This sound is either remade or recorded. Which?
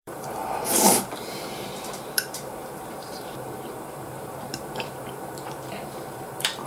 remade